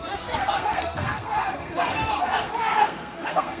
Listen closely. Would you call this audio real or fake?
fake